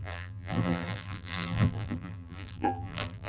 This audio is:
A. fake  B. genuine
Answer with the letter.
A